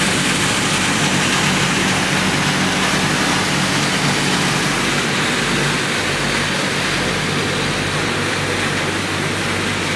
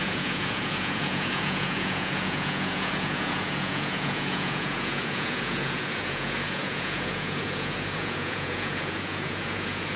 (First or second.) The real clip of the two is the first